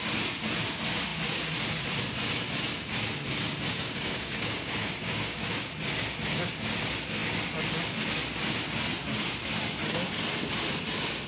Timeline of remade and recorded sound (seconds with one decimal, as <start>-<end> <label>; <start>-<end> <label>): 0.0-3.7 recorded; 3.7-5.7 remade; 5.7-11.3 recorded